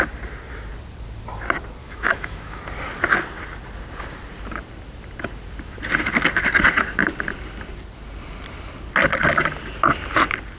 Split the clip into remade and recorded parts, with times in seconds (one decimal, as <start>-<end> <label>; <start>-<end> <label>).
0.0-1.8 recorded; 1.8-2.6 remade; 2.6-10.6 recorded